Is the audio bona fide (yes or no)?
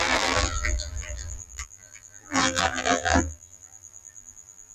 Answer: no